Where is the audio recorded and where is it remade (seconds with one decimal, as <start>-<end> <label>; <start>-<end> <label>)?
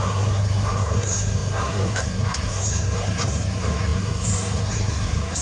0.0-5.4 remade